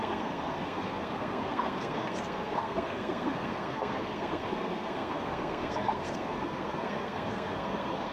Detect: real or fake fake